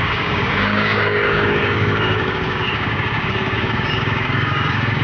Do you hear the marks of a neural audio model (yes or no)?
yes